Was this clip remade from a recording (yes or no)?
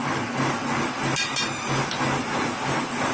no